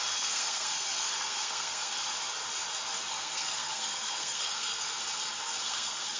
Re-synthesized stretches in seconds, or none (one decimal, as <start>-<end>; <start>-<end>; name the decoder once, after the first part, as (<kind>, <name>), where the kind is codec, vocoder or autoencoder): 0.0-1.9 (codec, SNAC); 3.1-5.0; 5.6-6.2